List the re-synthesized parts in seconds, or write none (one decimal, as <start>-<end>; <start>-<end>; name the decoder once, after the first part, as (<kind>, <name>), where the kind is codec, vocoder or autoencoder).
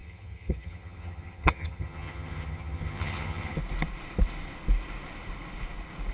0.0-3.6 (vocoder, HiFi-GAN)